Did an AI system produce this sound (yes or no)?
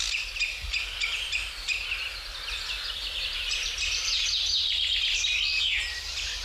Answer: no